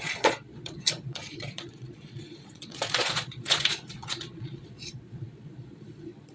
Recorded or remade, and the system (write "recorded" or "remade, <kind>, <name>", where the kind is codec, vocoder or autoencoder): remade, vocoder, Vocos